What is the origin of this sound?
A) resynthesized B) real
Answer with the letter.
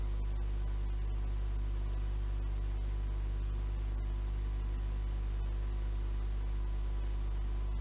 B